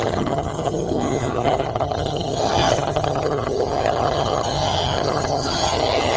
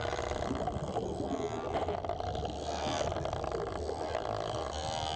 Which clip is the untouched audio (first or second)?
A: second